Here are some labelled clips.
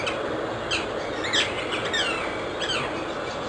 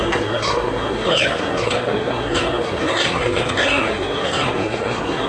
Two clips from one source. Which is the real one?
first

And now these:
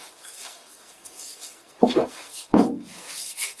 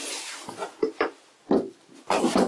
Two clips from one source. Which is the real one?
second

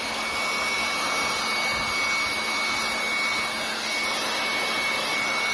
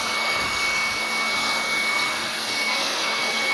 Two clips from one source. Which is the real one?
first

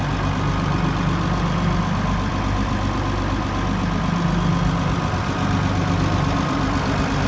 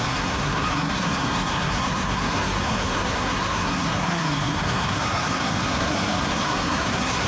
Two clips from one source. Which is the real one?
first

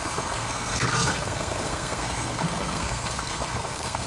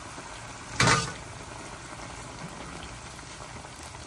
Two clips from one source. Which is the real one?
second